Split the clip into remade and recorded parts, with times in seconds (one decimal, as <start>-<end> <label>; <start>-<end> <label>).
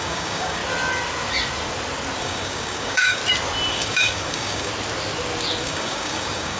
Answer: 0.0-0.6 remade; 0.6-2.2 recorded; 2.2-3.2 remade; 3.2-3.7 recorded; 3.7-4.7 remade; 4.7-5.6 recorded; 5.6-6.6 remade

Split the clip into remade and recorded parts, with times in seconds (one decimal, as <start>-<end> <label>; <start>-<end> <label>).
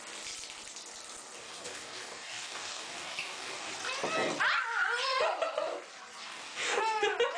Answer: 0.0-1.4 recorded; 1.4-3.7 remade; 3.7-6.2 recorded; 6.2-6.8 remade; 6.8-7.4 recorded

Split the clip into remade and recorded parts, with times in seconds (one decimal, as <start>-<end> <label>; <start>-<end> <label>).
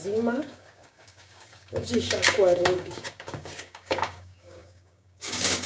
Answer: 0.0-5.7 remade